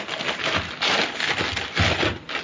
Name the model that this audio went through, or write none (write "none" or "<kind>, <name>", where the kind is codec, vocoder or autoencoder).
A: none